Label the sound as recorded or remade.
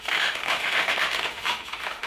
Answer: remade